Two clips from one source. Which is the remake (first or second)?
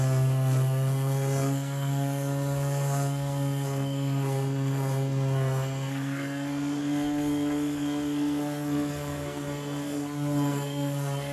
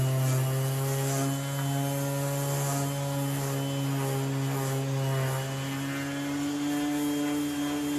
first